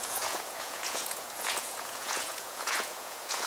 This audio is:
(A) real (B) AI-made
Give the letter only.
B